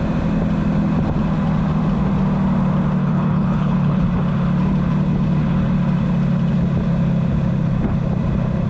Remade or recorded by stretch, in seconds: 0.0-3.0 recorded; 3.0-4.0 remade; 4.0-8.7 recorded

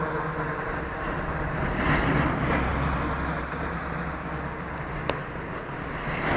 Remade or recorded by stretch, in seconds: 0.0-0.5 recorded; 0.5-1.6 remade; 1.6-2.7 recorded; 2.7-4.0 remade; 4.0-6.4 recorded

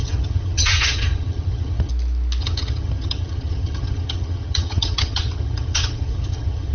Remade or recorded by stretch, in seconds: 0.0-1.9 remade; 1.9-2.4 recorded; 2.4-6.7 remade

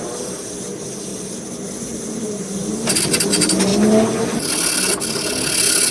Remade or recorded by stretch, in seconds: 0.0-5.9 recorded

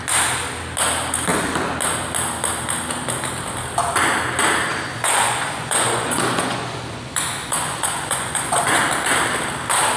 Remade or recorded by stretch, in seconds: 0.0-4.7 recorded; 4.7-8.8 remade; 8.8-10.0 recorded

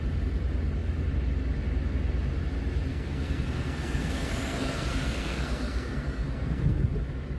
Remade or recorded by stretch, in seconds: 0.0-2.9 recorded; 2.9-6.9 remade; 6.9-7.4 recorded

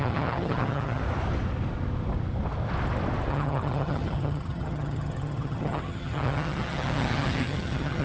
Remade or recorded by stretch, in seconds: 0.0-1.0 remade; 1.0-3.3 recorded; 3.3-8.0 remade

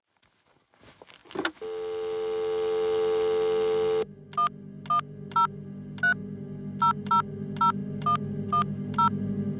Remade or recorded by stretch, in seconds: 0.0-9.6 recorded